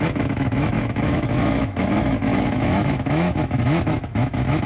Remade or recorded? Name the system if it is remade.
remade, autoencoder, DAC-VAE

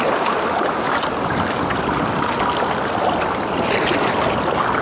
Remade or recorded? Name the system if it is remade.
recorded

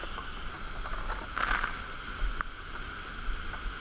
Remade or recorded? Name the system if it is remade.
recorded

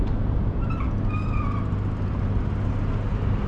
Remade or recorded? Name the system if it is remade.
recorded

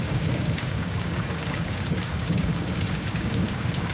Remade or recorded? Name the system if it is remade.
remade, codec, DAC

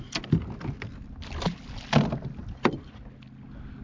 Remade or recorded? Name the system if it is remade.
recorded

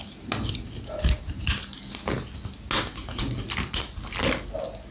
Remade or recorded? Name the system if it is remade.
recorded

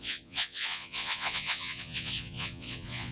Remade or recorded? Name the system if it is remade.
remade, vocoder, Vocos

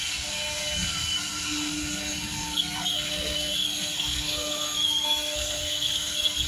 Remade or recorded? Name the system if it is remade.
remade, codec, SNAC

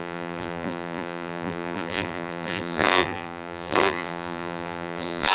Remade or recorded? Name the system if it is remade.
remade, vocoder, BigVGAN v2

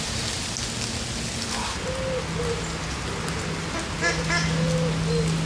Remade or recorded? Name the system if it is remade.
recorded